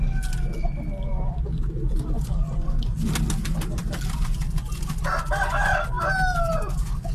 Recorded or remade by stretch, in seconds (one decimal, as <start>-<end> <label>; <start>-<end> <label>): 0.0-7.1 recorded